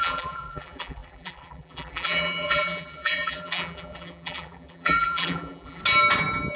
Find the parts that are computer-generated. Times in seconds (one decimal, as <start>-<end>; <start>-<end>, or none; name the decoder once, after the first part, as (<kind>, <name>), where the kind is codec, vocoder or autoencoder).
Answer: 0.0-5.8 (vocoder, BigVGAN v2)